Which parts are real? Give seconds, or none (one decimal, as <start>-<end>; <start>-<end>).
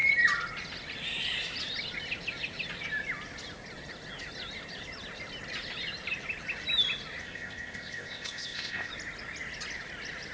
0.0-7.2; 8.9-10.3